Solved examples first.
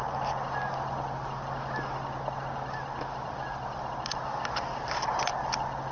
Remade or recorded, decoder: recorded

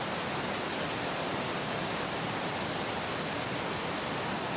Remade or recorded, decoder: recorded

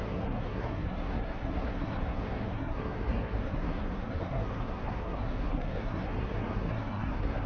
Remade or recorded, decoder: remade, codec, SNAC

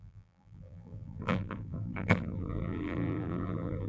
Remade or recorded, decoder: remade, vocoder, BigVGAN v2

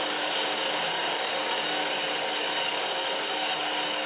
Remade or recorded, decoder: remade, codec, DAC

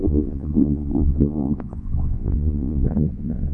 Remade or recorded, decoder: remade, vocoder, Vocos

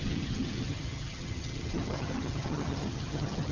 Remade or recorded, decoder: remade, vocoder, HiFi-GAN